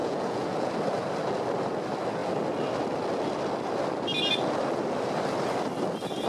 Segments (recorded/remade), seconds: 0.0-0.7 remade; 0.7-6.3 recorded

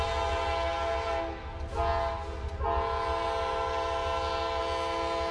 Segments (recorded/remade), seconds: 0.0-5.3 recorded

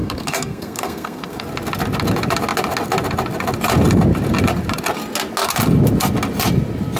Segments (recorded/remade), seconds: 0.0-1.4 remade; 1.4-7.0 recorded

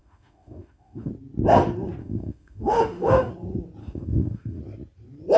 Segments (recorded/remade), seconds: 0.0-1.1 remade; 1.1-2.0 recorded; 2.0-3.3 remade; 3.3-3.8 recorded; 3.8-4.6 remade; 4.6-5.4 recorded